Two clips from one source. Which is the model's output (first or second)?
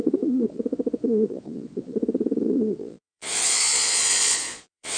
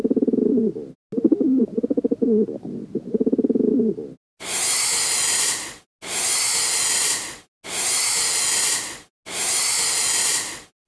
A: first